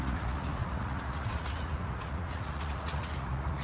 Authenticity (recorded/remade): remade